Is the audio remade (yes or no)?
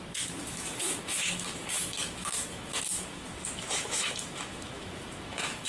yes